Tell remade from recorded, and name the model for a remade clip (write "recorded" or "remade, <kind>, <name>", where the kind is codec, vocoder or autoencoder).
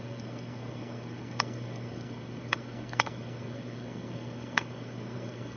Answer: remade, codec, SNAC